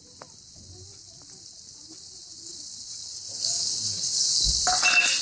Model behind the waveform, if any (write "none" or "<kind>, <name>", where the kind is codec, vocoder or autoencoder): none